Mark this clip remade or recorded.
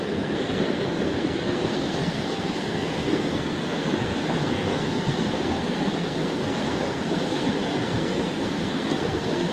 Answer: remade